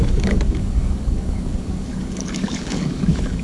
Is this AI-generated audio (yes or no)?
yes